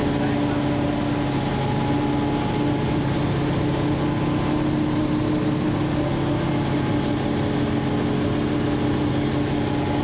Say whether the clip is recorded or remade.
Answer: recorded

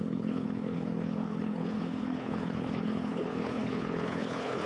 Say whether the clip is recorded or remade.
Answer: remade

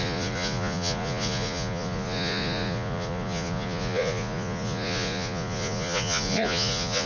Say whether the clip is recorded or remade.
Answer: remade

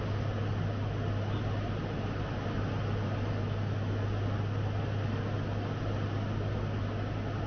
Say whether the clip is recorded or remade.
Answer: recorded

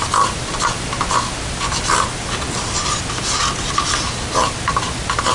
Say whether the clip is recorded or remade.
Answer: recorded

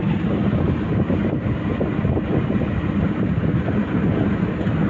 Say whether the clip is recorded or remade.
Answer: recorded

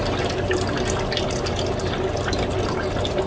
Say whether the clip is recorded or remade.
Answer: recorded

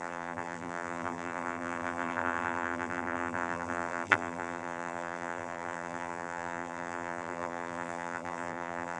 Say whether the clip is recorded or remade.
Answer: remade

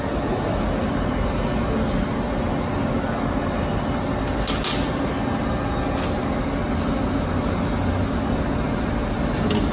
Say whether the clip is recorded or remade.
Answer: recorded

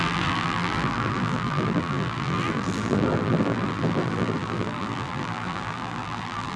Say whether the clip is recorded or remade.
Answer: remade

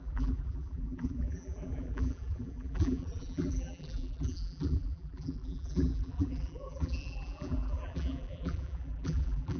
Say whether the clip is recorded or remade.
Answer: remade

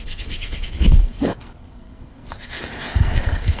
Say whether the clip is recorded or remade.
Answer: remade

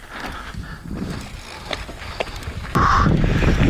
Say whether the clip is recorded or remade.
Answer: recorded